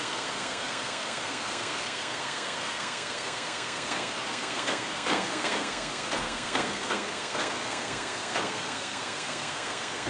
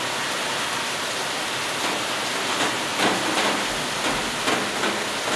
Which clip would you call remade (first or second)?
first